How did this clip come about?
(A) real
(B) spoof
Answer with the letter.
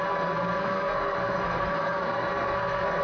B